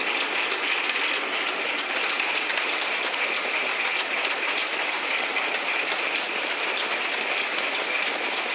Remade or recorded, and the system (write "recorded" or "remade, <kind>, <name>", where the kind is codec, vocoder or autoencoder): recorded